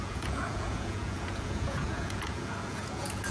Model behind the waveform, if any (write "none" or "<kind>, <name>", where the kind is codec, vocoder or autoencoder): vocoder, Vocos